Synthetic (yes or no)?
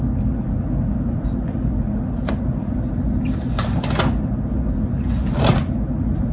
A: no